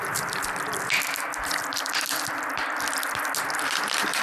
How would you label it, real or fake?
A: real